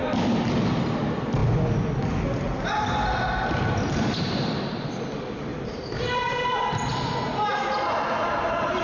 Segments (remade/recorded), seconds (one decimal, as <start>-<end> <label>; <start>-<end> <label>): 0.0-8.8 recorded